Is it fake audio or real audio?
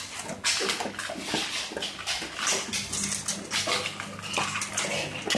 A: real